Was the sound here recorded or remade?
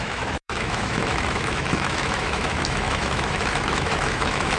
remade